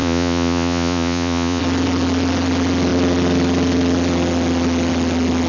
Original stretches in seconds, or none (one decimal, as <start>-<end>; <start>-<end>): 1.6-5.5